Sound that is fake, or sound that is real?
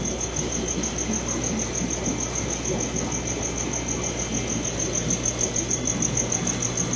real